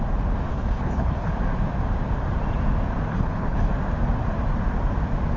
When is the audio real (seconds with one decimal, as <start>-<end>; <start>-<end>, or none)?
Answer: 0.0-0.5; 1.3-3.1; 3.7-5.4